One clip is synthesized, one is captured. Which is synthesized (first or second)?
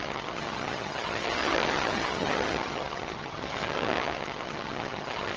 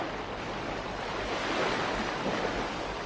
first